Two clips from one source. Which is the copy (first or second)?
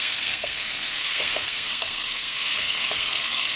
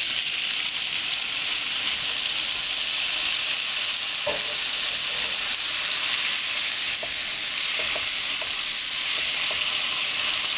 first